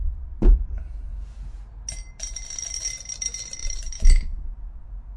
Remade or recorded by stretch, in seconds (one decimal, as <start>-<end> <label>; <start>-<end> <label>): 0.0-1.1 remade; 1.1-2.1 recorded; 2.1-5.2 remade